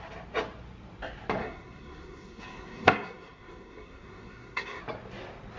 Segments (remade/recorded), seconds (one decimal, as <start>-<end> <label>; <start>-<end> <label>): 0.0-1.4 recorded; 1.4-4.8 remade; 4.8-5.6 recorded